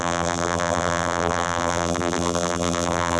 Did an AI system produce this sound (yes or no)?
yes